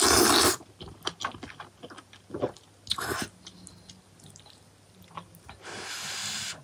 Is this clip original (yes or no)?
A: yes